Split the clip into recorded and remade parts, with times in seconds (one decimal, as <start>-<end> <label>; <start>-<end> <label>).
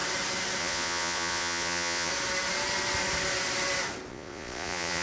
0.0-0.6 recorded; 0.6-2.1 remade; 2.1-4.1 recorded; 4.1-5.0 remade